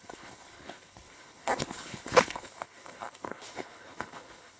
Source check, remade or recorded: remade